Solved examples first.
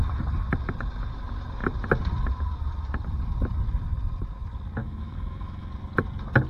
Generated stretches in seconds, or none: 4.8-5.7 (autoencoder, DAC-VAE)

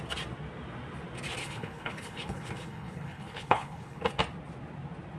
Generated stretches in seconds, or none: 1.4-4.0 (codec, HILCodec)